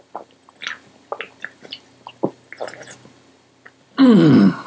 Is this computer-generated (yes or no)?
no